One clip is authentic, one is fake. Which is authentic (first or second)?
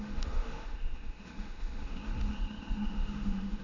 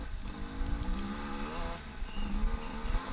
second